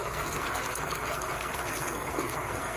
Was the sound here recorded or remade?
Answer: remade